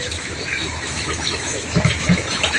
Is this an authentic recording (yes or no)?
no